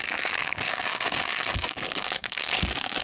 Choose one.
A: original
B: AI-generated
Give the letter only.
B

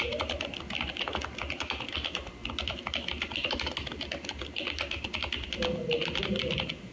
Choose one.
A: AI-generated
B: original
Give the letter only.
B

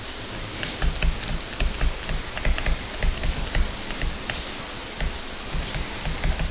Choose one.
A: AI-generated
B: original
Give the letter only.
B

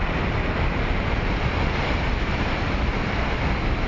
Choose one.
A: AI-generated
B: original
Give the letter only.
B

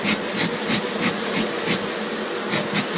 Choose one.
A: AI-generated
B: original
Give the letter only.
B